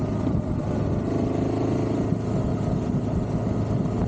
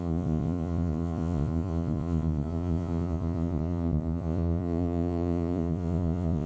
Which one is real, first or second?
first